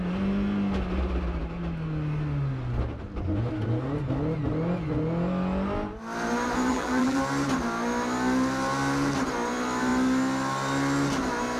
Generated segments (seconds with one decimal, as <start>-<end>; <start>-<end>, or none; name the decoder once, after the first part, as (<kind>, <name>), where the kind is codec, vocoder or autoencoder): 6.7-7.2 (vocoder, BigVGAN v2)